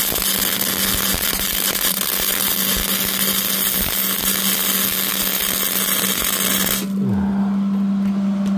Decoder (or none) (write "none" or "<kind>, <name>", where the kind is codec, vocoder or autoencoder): none